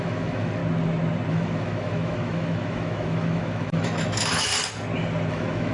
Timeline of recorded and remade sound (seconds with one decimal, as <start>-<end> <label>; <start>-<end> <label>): 0.0-0.6 remade; 0.6-1.3 recorded; 1.3-4.5 remade; 4.5-5.3 recorded; 5.3-5.7 remade